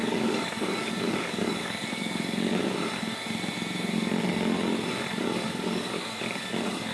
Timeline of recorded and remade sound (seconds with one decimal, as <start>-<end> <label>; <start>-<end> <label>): 0.0-2.5 remade; 2.5-5.1 recorded; 5.1-6.9 remade